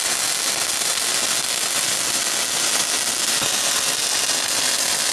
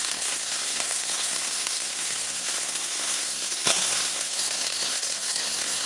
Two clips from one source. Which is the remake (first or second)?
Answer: second